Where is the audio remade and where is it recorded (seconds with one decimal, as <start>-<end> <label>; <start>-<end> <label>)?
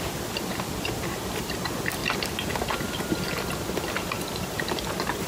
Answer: 0.0-5.3 recorded